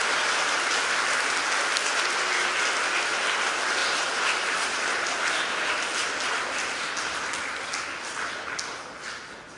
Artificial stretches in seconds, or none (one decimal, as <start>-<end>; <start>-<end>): 3.8-4.9